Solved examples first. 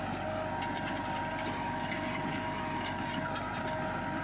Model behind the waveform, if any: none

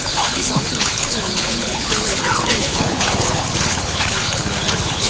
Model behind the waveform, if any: codec, HILCodec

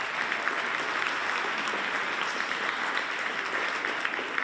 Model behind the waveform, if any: none